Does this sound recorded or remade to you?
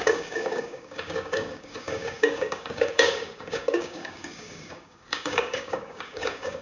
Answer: remade